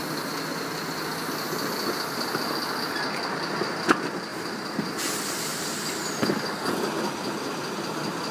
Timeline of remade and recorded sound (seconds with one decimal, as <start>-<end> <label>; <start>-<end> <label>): 0.0-4.3 recorded; 4.3-6.7 remade; 6.7-8.3 recorded